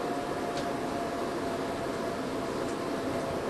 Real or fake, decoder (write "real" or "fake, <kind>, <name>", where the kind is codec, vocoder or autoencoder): real